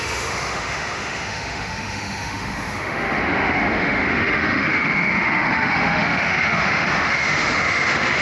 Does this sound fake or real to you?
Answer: fake